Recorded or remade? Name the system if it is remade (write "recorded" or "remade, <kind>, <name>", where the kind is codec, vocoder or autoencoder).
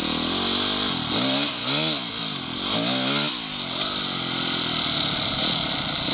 recorded